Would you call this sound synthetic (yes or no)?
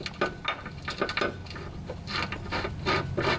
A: no